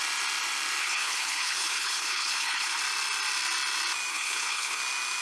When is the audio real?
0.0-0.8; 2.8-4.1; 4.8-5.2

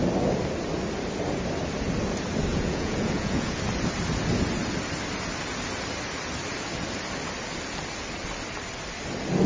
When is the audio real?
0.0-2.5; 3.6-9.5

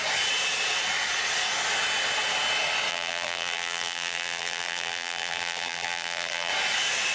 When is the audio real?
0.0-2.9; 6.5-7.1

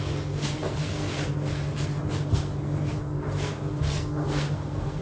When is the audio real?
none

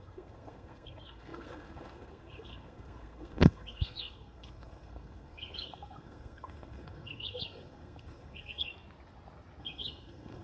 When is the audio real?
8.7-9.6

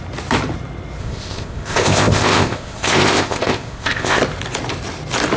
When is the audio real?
0.0-1.0; 4.2-5.4